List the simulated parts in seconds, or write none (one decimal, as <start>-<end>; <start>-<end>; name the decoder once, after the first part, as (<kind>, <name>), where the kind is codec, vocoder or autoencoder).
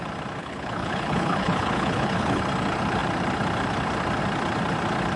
0.4-2.4 (codec, HILCodec)